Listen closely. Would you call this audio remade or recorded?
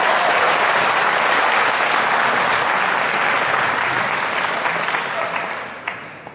recorded